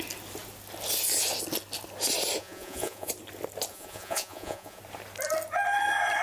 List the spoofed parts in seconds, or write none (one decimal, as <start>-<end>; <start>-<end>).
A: 2.4-3.1; 3.7-4.8